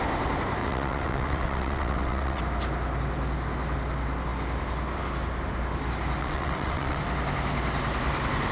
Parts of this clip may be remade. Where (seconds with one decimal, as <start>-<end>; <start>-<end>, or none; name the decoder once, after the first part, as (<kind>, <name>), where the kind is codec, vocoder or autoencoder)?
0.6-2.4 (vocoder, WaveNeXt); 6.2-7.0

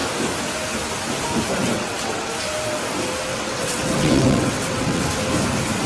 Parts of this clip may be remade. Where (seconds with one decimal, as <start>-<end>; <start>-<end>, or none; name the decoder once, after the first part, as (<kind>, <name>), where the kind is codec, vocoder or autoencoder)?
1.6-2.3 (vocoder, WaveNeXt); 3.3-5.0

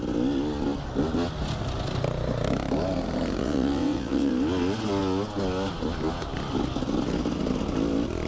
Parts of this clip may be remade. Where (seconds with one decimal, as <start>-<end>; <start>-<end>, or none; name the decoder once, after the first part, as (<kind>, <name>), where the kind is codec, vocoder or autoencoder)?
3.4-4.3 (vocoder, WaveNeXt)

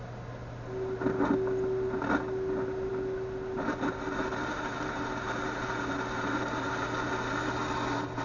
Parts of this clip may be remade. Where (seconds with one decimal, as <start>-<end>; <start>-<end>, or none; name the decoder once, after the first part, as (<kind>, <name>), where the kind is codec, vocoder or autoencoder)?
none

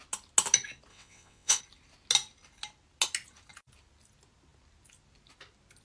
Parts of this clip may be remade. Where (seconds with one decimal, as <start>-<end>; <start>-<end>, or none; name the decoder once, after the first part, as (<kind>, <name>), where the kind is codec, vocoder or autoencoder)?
0.9-1.6 (vocoder, WaveNeXt)

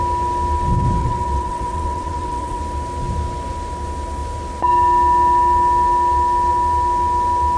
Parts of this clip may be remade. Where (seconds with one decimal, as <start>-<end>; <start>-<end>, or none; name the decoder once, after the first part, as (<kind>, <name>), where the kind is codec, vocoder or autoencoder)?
1.0-2.6 (vocoder, WaveNeXt)